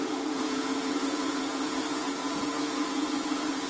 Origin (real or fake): fake